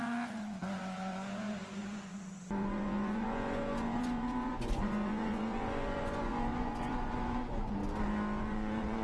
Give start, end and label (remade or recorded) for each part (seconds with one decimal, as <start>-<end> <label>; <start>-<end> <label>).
0.0-7.8 remade; 7.8-8.4 recorded; 8.4-9.0 remade